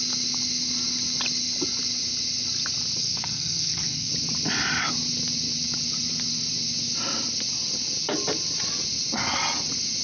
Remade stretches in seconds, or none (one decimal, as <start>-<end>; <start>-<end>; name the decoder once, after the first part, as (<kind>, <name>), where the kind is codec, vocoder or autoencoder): 3.0-4.1 (codec, SNAC)